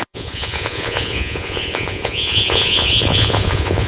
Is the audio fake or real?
fake